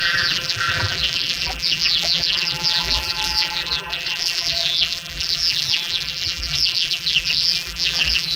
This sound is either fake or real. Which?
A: fake